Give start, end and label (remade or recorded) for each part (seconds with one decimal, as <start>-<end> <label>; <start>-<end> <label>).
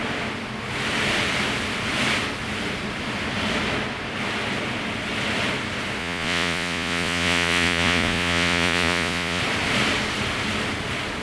0.0-6.0 recorded; 6.0-9.4 remade; 9.4-11.2 recorded